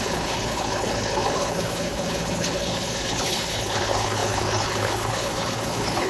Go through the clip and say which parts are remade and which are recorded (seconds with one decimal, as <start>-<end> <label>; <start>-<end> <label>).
0.0-6.1 remade